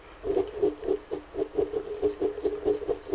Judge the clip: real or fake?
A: real